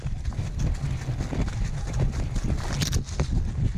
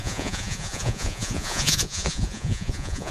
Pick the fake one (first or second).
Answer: second